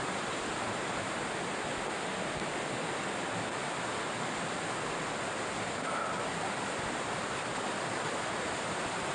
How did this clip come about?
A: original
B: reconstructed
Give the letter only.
A